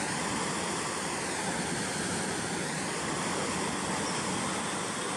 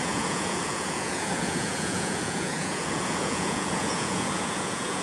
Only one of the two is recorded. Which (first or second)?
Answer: first